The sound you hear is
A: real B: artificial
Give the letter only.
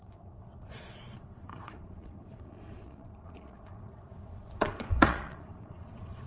B